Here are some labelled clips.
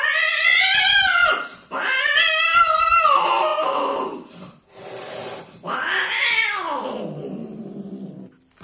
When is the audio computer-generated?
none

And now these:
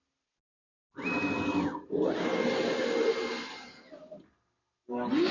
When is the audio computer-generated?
none

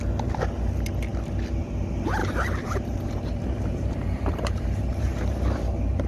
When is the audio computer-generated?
2.2-6.1 (vocoder, BigVGAN v2)

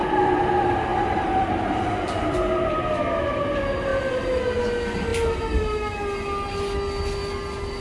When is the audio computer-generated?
0.0-0.5 (vocoder, BigVGAN v2); 0.9-2.5; 3.9-4.4

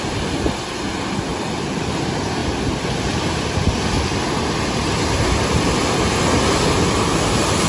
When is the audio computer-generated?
1.3-1.9 (vocoder, BigVGAN v2)